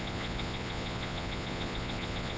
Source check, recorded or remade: remade